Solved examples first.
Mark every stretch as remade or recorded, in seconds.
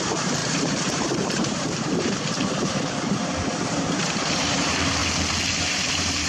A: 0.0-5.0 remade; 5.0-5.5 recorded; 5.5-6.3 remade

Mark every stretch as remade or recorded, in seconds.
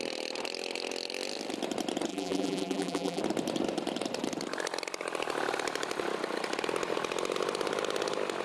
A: 0.0-2.1 recorded; 2.1-3.2 remade; 3.2-8.4 recorded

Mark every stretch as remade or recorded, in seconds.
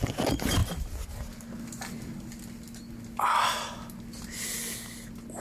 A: 0.0-5.4 recorded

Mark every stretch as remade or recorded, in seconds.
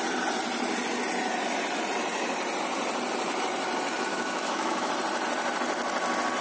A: 0.0-4.1 recorded; 4.1-4.9 remade; 4.9-6.4 recorded